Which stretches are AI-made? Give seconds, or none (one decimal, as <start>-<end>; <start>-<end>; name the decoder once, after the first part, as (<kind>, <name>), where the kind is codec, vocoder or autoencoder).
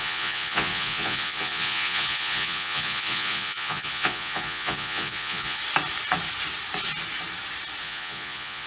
0.0-5.6 (vocoder, Vocos); 7.8-8.7